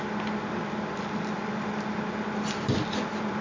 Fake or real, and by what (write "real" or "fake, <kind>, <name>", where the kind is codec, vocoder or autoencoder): real